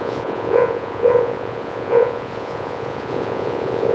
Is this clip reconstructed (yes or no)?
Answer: yes